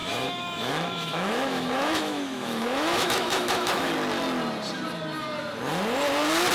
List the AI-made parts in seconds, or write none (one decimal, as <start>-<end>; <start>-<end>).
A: 0.0-3.9